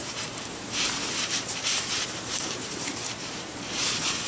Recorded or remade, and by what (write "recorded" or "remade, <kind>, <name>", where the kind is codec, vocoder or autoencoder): remade, vocoder, BigVGAN v2